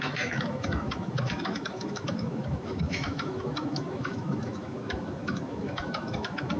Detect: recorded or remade remade